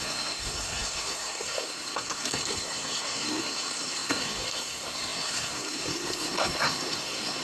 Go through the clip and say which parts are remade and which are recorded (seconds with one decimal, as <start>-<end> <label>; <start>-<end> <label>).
0.0-7.4 remade